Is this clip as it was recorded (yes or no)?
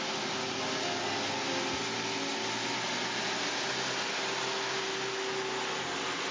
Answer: yes